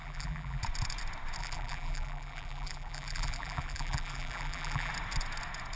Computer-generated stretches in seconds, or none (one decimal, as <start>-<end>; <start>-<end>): 0.0-0.6; 1.4-4.9